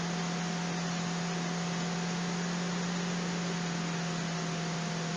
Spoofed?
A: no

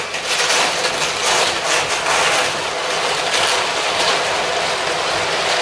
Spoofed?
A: no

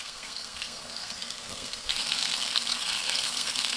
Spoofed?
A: yes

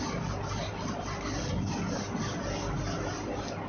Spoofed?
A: no